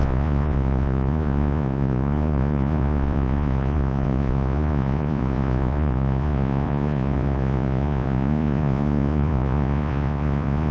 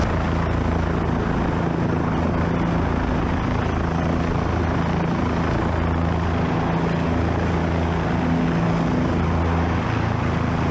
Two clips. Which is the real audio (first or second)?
second